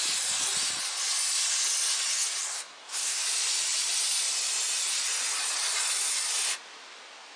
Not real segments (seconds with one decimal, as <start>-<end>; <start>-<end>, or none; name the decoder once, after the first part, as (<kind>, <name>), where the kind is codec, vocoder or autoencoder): 2.5-3.2 (codec, SNAC)